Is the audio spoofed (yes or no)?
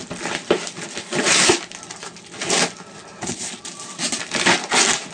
no